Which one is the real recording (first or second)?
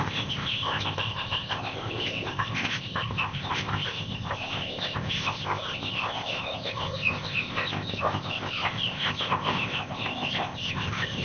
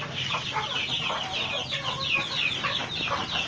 second